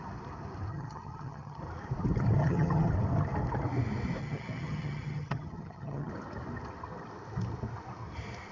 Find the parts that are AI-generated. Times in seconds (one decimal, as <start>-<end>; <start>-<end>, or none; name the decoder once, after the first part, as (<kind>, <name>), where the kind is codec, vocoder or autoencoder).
0.7-1.6 (vocoder, HiFi-GAN); 2.4-2.9; 4.2-6.1